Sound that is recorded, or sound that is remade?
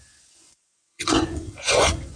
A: remade